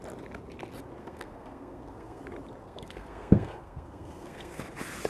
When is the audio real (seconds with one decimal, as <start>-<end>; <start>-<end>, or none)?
0.0-1.0; 2.2-2.6; 4.6-5.1